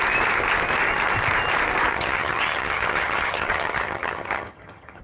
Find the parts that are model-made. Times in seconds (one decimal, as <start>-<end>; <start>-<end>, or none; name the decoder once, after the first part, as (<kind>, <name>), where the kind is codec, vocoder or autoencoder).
1.9-5.0 (vocoder, HiFi-GAN)